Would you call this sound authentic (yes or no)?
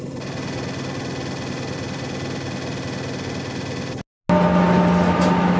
yes